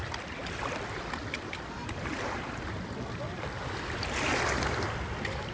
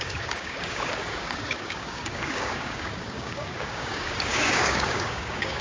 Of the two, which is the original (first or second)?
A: first